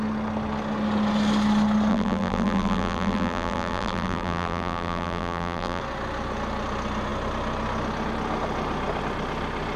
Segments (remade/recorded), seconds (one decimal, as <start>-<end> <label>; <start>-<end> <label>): 0.0-1.9 recorded; 1.9-5.8 remade; 5.8-9.8 recorded